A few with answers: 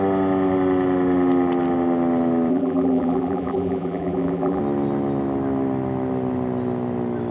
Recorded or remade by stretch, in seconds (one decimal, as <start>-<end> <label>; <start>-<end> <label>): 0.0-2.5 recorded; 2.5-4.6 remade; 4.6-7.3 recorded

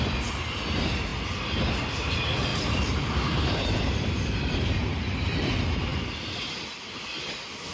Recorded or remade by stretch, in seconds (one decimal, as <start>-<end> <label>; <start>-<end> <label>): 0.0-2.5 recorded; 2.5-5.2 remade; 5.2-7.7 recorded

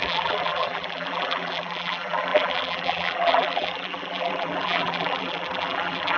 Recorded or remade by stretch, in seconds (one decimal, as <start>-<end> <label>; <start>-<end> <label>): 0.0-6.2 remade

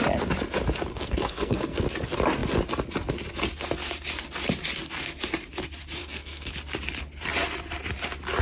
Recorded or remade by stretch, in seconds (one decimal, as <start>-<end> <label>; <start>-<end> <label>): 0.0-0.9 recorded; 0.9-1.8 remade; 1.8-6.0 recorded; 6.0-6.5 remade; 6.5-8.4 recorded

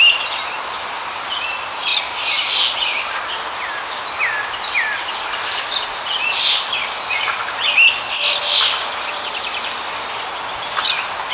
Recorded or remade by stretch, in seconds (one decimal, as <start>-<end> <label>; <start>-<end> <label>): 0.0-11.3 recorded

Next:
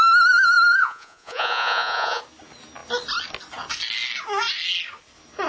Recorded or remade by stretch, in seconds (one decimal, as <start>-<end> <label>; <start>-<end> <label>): 0.0-0.8 recorded; 0.8-2.2 remade; 2.2-5.5 recorded